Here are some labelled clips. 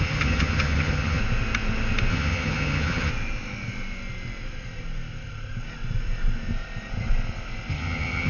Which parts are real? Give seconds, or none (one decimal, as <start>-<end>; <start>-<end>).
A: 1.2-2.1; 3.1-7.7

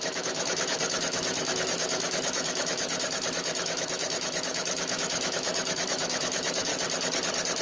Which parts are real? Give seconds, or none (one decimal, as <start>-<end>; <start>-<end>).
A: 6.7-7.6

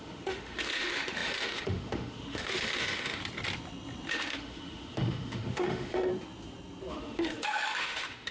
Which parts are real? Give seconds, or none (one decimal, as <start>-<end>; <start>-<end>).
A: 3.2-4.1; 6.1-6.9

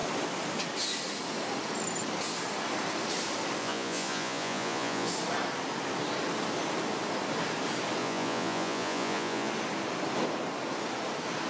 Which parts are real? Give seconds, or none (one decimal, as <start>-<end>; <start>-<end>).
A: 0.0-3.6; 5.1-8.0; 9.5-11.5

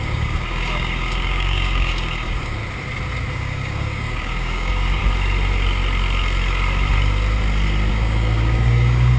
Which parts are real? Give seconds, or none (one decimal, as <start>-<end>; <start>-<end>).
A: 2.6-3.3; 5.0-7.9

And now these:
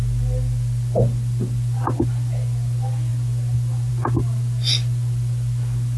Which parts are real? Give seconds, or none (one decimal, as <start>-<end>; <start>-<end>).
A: 0.0-6.0